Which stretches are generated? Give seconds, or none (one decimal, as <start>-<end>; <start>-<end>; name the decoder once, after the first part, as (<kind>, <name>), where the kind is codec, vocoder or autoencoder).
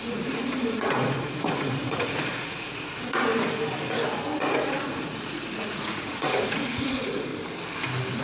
0.0-3.3 (vocoder, Vocos); 4.6-7.3